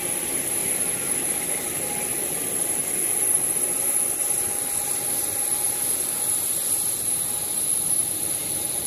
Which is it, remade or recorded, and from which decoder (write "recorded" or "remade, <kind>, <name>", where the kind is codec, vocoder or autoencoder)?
recorded